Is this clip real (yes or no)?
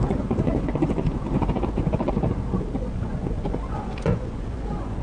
no